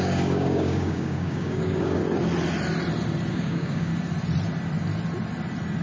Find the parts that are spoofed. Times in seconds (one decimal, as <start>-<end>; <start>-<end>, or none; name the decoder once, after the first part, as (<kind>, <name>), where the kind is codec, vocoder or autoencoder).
0.0-2.0 (codec, DAC); 3.3-3.9